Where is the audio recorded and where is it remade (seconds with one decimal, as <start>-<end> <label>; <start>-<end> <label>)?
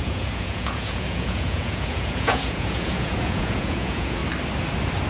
0.0-4.2 remade; 4.2-5.1 recorded